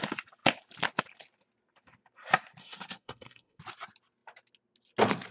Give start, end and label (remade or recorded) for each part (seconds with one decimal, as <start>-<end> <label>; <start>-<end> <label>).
0.0-2.6 recorded; 2.6-3.6 remade; 3.6-5.3 recorded